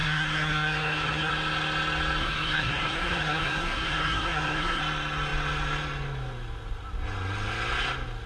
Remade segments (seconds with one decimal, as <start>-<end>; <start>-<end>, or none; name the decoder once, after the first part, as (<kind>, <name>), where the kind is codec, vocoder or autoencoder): 0.0-1.3 (codec, SNAC); 2.2-4.8